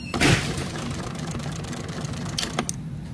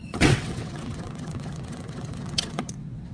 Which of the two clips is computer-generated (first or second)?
second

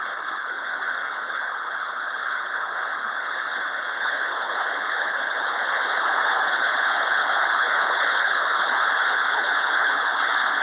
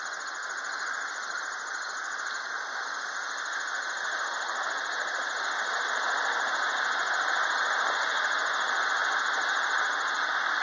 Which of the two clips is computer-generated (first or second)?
first